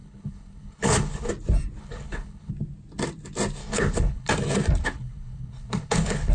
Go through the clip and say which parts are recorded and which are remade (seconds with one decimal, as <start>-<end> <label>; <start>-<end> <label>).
0.0-1.3 remade; 1.3-1.8 recorded; 1.8-2.5 remade; 2.5-3.6 recorded; 3.6-4.3 remade; 4.3-4.8 recorded; 4.8-6.3 remade